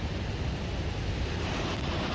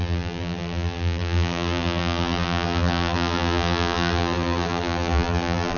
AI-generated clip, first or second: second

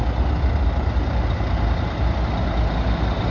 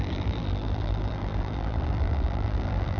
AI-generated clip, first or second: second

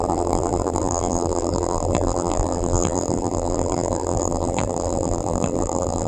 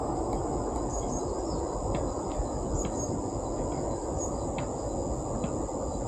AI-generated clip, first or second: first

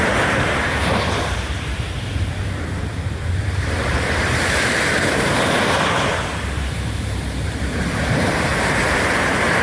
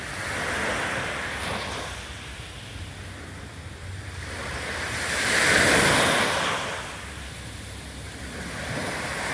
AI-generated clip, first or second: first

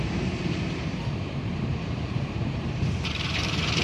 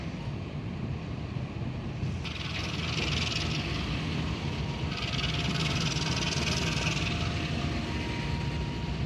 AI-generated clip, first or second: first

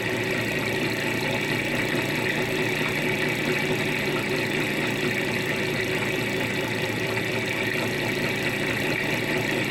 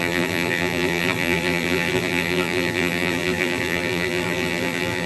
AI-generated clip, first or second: second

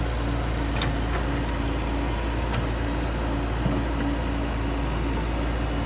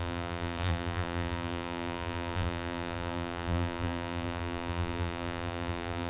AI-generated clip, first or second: second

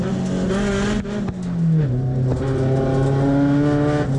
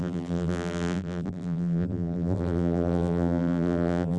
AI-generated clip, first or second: second